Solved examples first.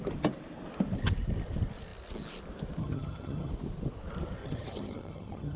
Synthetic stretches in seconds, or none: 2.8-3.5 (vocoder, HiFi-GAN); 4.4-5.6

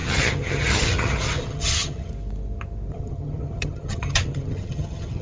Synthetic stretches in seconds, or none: 0.0-2.1 (vocoder, HiFi-GAN); 2.9-5.2